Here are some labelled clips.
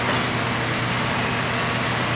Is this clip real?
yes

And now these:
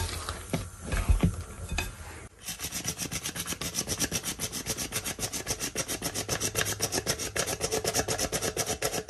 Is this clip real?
yes